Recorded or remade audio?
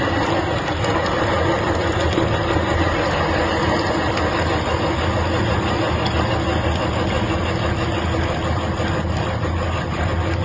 recorded